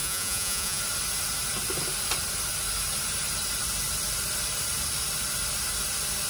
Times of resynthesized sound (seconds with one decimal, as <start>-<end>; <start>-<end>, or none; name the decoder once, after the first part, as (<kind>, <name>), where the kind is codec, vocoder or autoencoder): 0.0-0.8 (vocoder, Vocos)